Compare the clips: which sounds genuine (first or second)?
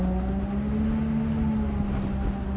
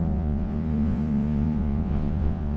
first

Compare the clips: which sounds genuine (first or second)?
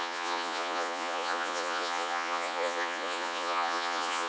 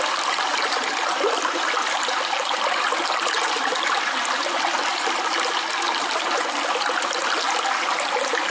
second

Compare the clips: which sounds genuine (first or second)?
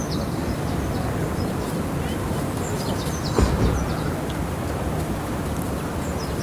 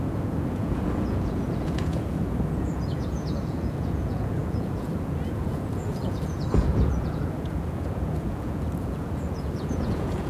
first